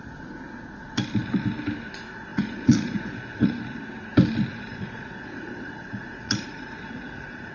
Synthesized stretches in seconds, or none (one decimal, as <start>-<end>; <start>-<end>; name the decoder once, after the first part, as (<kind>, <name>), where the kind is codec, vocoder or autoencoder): 2.3-3.6 (vocoder, Vocos); 4.5-7.5